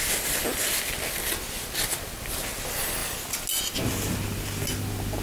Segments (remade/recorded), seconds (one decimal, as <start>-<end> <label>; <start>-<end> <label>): 0.0-5.2 recorded